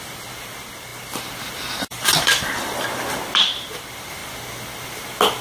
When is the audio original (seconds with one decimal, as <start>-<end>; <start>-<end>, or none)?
4.2-5.4